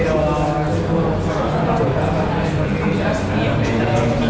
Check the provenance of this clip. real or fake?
real